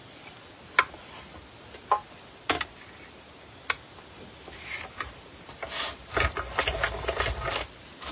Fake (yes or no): no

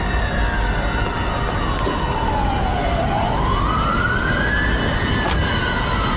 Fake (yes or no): no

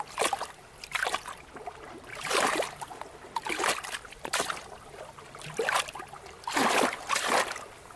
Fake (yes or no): no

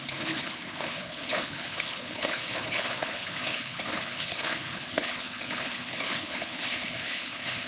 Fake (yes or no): yes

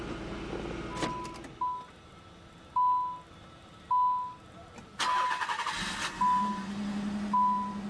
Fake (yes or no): no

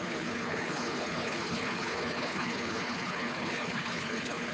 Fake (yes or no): yes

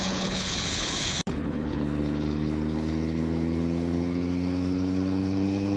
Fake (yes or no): yes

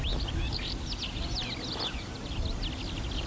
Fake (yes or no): no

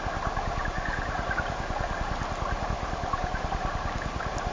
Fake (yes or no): no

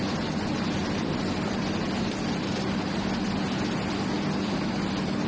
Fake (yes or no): no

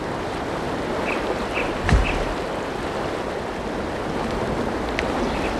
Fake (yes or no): no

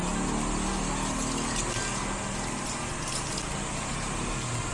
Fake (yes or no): no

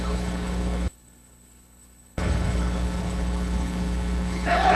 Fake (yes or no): yes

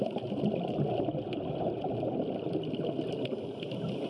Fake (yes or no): no